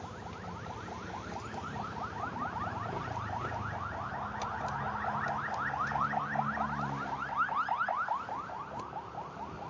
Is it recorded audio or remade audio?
recorded